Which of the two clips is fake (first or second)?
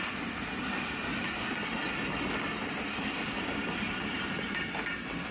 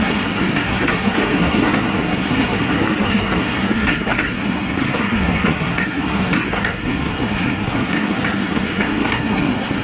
second